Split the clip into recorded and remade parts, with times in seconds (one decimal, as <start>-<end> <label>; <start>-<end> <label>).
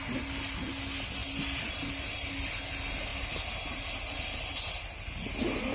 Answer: 0.0-5.7 recorded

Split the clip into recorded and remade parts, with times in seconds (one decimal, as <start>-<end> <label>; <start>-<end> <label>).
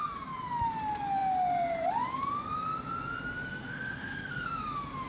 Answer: 0.0-3.5 recorded; 3.5-4.6 remade; 4.6-5.1 recorded